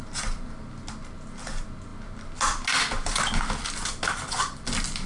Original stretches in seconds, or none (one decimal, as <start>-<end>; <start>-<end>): 0.0-5.1

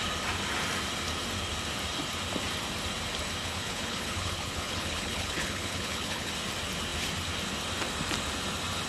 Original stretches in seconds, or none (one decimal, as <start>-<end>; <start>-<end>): 0.0-3.4; 6.3-8.9